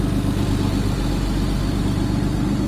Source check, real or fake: real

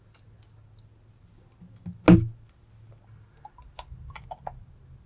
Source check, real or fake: real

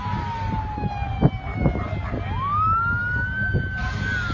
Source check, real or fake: real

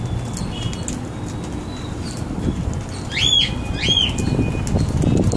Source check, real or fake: real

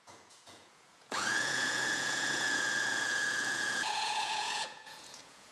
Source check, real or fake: fake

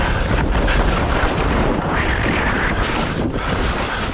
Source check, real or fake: fake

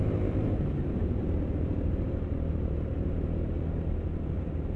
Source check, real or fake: fake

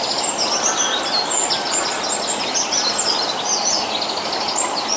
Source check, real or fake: real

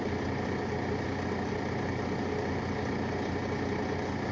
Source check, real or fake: real